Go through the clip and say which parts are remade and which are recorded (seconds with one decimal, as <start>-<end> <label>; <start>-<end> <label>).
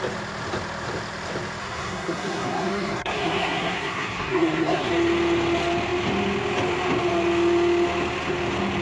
0.0-1.6 recorded; 1.6-4.9 remade; 4.9-8.8 recorded